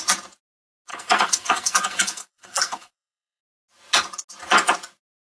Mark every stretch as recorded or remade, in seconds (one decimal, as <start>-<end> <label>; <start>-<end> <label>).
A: 0.0-0.9 recorded; 0.9-3.4 remade; 3.4-5.4 recorded